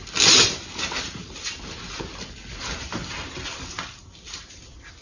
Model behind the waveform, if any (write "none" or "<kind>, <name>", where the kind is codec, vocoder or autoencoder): none